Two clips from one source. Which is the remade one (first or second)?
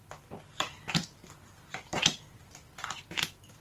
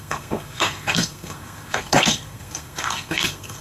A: second